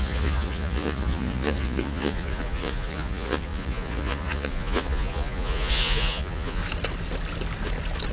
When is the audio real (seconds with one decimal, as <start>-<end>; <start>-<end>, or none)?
6.6-8.1